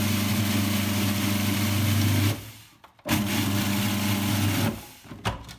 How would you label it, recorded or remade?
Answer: recorded